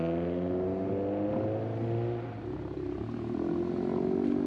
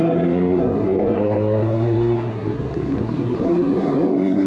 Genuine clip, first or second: first